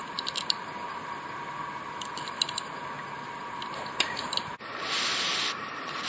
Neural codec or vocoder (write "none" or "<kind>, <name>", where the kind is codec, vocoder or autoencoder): none